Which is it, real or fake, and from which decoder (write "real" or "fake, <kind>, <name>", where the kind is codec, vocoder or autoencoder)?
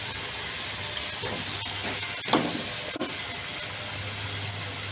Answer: real